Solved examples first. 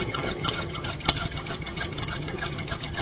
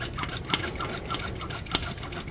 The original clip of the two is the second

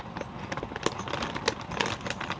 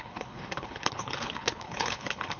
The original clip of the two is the first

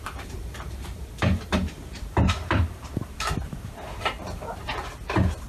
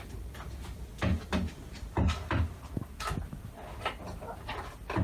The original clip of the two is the second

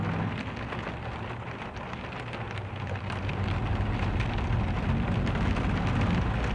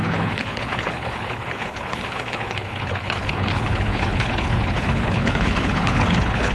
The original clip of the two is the first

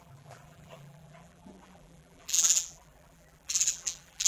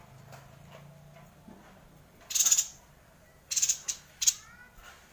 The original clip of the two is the second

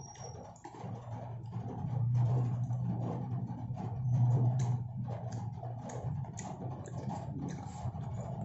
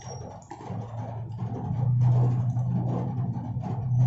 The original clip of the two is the second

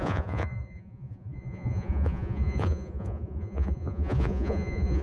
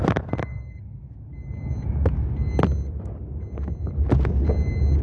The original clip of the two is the second